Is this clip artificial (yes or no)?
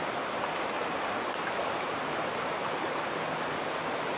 no